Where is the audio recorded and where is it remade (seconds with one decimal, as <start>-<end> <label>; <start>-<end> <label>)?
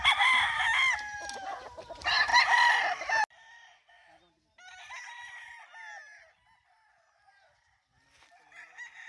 0.0-9.1 recorded